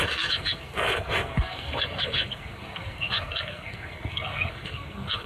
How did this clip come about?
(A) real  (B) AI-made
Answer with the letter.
B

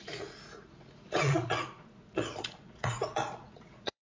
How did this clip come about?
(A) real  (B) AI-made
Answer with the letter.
B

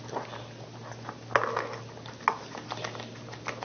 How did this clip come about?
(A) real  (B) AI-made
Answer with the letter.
A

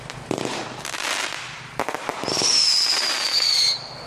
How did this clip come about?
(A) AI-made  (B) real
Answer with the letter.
B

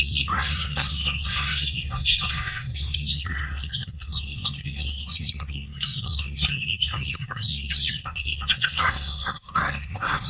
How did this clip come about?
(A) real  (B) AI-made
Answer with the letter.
B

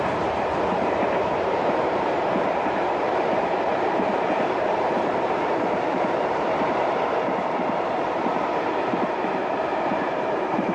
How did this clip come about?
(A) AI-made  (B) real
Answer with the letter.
A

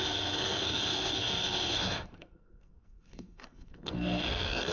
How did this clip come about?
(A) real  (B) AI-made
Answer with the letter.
B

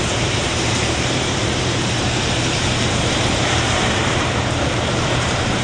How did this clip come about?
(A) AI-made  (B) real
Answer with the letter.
A